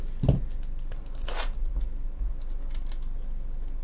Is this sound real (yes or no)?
yes